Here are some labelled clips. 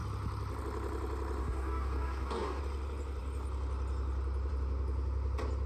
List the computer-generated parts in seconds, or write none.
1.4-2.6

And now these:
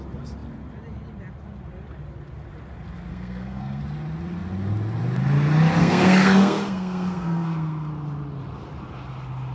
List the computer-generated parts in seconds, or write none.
3.1-3.8; 5.8-7.9

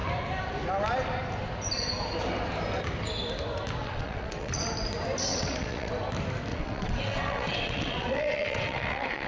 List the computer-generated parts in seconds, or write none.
3.8-4.6; 5.3-5.9; 6.5-9.3

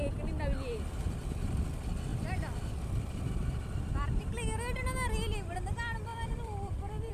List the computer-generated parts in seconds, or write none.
2.1-2.6; 6.1-7.1

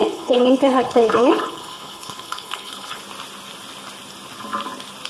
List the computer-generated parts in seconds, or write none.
0.0-3.0

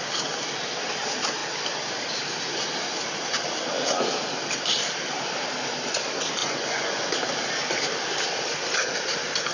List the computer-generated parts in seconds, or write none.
6.4-7.0

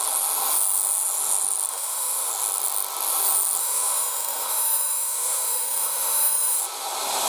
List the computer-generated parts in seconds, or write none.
1.7-2.3; 3.6-6.6

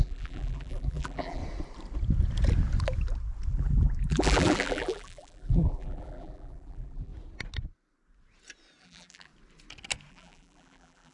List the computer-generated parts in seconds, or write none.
0.0-1.4; 3.5-7.1; 8.8-9.3; 10.1-11.1